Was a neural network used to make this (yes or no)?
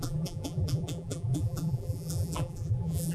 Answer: yes